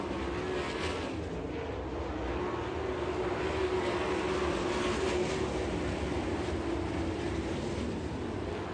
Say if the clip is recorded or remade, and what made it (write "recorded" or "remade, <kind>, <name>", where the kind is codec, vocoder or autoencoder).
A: recorded